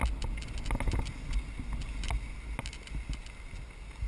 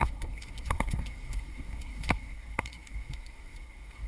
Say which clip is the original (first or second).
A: first